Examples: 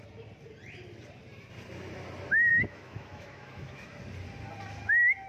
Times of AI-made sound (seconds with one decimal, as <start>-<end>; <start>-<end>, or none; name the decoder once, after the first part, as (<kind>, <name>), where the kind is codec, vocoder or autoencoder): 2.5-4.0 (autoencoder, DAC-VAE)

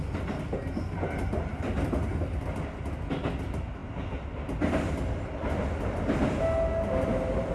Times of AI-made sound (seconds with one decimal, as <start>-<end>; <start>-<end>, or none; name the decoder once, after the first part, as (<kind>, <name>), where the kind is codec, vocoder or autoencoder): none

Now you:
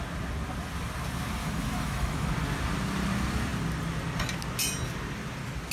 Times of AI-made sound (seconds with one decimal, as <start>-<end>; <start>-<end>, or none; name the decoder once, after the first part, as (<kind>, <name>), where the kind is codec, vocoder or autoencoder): 1.4-2.3 (autoencoder, DAC-VAE)